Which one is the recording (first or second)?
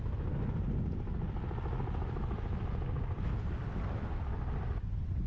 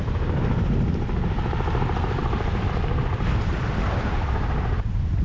first